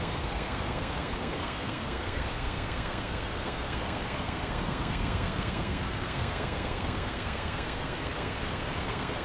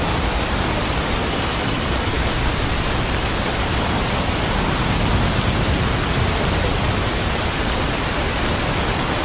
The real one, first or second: second